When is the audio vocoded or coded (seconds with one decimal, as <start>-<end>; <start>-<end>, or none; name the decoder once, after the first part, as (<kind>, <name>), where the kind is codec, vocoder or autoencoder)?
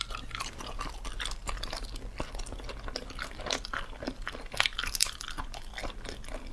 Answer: none